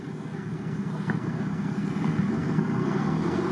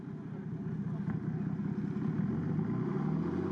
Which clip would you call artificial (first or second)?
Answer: first